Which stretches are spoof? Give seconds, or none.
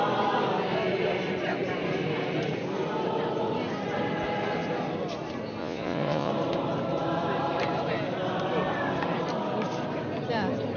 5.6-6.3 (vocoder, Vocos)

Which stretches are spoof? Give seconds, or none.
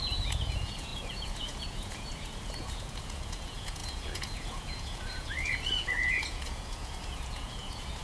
0.0-8.0 (vocoder, Vocos)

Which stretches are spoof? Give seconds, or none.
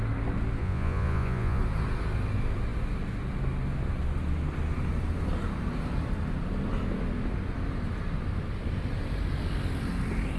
0.6-1.6 (vocoder, Vocos)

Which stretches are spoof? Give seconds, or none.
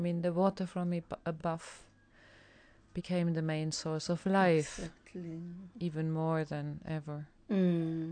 none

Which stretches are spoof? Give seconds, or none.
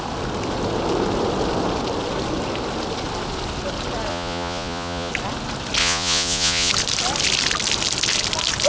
4.1-5.1 (vocoder, Vocos); 5.8-6.7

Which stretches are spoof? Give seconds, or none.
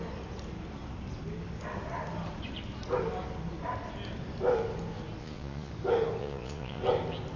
5.2-5.7 (vocoder, Vocos); 6.2-6.8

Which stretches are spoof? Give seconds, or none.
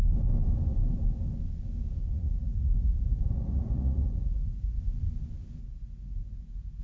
2.0-4.8 (vocoder, Vocos); 5.6-6.8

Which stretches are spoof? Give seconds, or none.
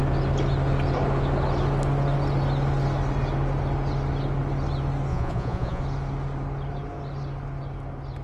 5.1-5.8 (vocoder, Vocos)